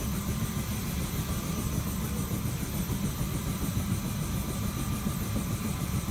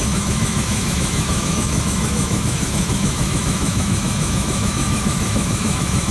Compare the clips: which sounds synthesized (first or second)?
second